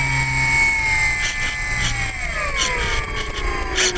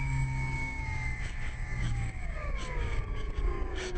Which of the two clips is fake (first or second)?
second